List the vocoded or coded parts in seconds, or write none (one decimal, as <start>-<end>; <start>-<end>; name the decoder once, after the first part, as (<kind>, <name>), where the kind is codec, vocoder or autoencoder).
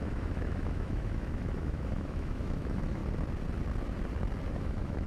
0.0-3.0 (autoencoder, DAC-VAE); 4.5-5.1